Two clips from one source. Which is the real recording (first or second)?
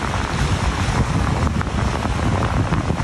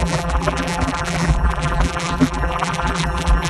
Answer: first